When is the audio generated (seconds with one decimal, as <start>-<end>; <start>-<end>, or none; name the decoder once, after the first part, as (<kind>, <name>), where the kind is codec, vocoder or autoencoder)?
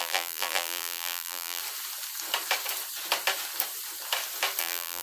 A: 0.0-1.6 (vocoder, BigVGAN v2); 4.6-5.0